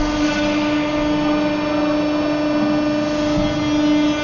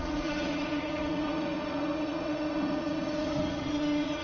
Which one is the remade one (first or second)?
second